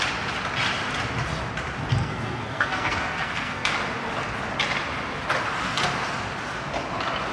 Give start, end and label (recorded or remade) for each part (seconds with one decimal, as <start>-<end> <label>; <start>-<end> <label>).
0.0-1.9 recorded; 1.9-3.7 remade; 3.7-7.3 recorded